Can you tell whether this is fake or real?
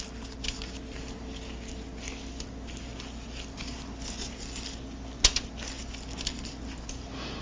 real